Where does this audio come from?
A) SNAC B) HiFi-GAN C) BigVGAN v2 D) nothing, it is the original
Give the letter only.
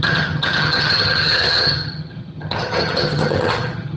B